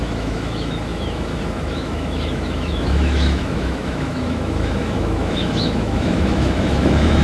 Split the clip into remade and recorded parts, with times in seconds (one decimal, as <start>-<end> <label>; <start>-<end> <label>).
0.0-7.2 remade